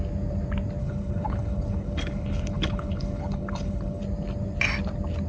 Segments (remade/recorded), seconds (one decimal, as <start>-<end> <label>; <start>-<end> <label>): 0.0-0.8 recorded; 0.8-4.0 remade; 4.0-5.3 recorded